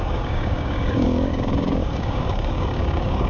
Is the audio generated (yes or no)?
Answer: yes